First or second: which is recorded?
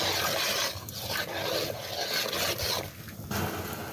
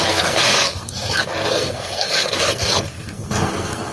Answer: first